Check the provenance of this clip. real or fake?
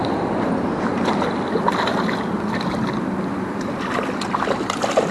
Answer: real